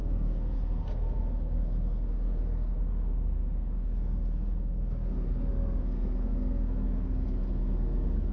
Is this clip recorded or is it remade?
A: remade